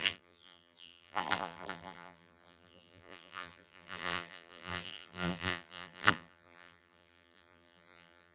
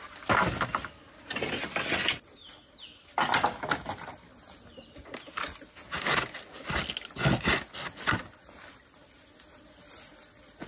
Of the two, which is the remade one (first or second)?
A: first